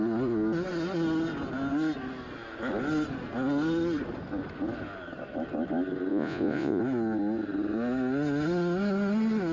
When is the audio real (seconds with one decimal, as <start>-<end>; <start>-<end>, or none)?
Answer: 0.0-6.1; 6.8-9.5